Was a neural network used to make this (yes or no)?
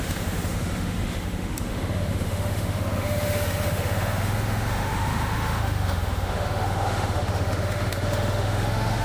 yes